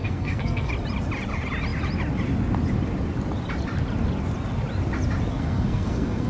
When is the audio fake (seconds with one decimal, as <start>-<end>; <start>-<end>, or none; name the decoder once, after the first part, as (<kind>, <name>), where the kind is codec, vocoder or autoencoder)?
0.0-0.7 (codec, SNAC); 5.3-6.3